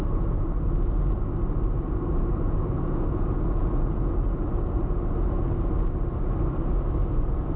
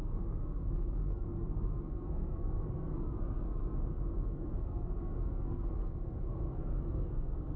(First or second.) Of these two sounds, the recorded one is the first